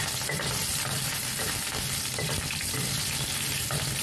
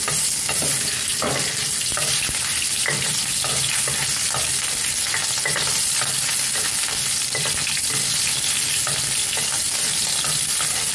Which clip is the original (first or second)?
second